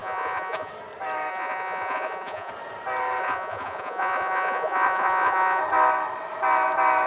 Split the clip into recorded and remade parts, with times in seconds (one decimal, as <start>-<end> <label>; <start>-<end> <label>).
0.0-0.7 remade; 0.7-1.3 recorded; 1.3-2.5 remade; 2.5-3.2 recorded; 3.2-5.6 remade; 5.6-7.1 recorded